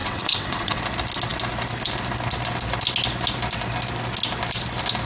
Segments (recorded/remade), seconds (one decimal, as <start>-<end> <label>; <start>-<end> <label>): 0.0-0.8 remade; 0.8-5.1 recorded